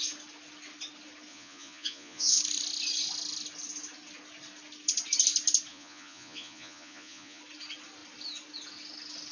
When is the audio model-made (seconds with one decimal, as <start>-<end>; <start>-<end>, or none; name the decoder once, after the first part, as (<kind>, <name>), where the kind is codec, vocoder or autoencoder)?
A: 1.3-2.4 (vocoder, Vocos); 5.7-7.4